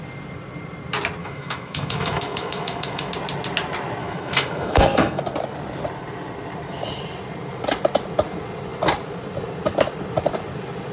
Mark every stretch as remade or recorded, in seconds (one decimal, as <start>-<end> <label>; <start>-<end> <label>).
0.0-1.2 recorded; 1.2-3.1 remade; 3.1-4.0 recorded; 4.0-5.2 remade; 5.2-10.9 recorded